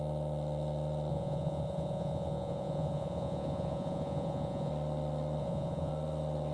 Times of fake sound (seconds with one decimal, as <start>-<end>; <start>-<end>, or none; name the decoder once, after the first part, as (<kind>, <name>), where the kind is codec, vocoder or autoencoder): 1.1-4.7 (vocoder, Vocos); 5.4-5.9

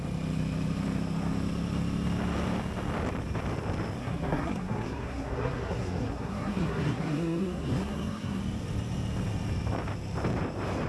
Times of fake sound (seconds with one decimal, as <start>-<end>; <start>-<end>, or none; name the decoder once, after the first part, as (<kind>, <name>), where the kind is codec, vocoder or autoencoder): 4.0-8.4 (codec, SNAC)

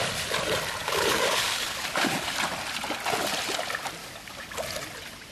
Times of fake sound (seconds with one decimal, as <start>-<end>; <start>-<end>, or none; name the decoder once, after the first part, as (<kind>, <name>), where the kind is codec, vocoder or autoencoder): 0.8-2.2 (codec, DAC); 4.0-4.5

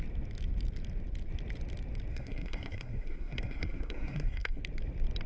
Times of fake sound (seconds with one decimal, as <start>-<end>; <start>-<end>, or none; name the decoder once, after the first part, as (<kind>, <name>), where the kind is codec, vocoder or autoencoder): 2.1-4.6 (codec, SNAC)

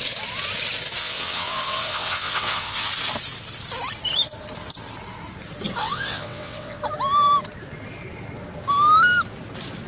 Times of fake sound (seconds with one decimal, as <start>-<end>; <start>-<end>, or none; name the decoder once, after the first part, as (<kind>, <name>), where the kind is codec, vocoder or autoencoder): 1.0-2.9 (vocoder, WaveNeXt); 5.8-6.8